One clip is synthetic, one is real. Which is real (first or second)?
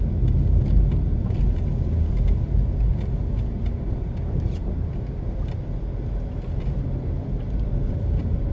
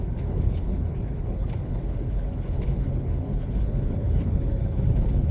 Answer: first